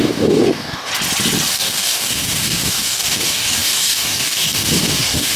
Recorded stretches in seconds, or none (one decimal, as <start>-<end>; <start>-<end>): 0.9-1.5